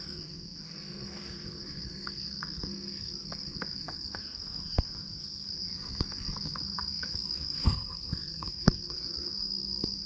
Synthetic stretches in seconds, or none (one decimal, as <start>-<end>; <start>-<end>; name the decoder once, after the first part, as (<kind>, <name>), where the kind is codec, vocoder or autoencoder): 0.0-10.1 (codec, SNAC)